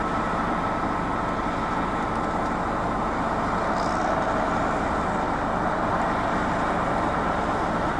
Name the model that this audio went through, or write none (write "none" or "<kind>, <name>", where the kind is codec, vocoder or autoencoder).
none